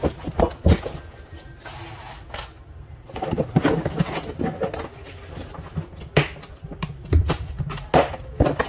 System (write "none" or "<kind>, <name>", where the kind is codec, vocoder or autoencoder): none